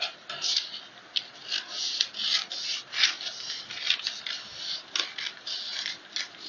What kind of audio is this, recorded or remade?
recorded